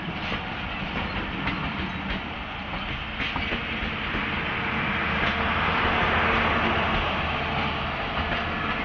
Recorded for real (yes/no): yes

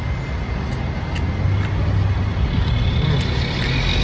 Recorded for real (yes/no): yes